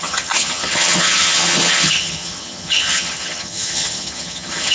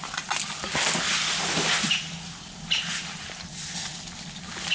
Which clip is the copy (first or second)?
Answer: first